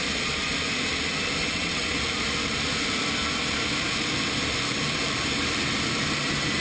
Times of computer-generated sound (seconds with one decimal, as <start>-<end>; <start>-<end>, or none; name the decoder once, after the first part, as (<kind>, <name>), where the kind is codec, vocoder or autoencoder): 1.4-2.0 (vocoder, WaveNeXt)